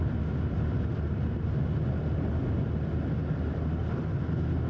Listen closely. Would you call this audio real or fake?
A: real